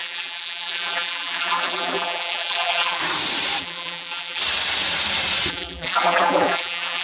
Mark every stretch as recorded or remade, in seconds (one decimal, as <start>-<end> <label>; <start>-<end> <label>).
0.0-3.0 remade; 3.0-3.6 recorded; 3.6-4.4 remade; 4.4-5.5 recorded; 5.5-7.0 remade